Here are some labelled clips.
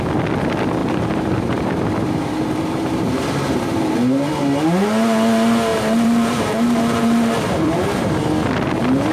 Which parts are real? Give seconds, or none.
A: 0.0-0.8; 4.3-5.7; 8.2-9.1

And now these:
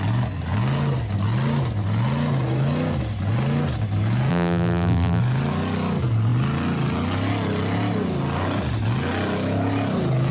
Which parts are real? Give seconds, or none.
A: 0.0-4.3; 5.2-10.3

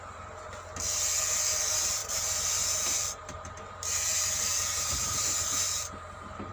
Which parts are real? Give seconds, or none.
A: none

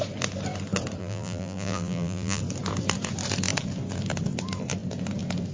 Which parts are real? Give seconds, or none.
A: 0.0-1.0; 2.4-5.5